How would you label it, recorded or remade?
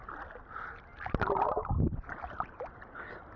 recorded